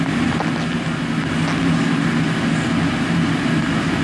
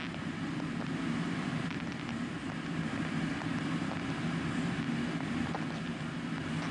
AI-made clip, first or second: second